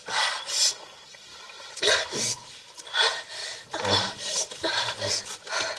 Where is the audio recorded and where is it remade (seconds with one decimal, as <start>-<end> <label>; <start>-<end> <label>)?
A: 0.0-1.3 recorded; 1.3-1.9 remade; 1.9-3.4 recorded; 3.4-5.1 remade; 5.1-5.8 recorded